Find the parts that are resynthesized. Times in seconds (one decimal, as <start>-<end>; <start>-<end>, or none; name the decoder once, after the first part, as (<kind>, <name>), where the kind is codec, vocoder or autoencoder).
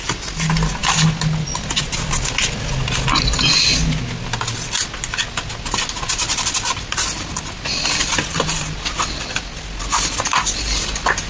none